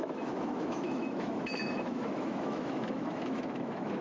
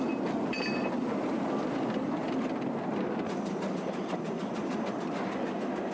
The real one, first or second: second